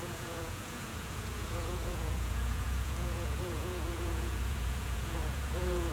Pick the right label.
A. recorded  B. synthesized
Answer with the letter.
B